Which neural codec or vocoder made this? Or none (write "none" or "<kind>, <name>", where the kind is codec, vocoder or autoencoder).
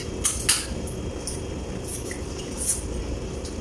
none